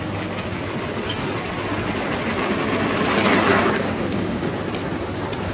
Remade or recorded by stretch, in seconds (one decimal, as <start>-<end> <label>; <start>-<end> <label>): 0.0-3.5 recorded; 3.5-4.5 remade; 4.5-5.5 recorded